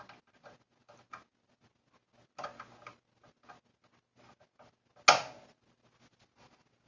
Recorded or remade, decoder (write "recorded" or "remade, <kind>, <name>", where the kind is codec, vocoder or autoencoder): recorded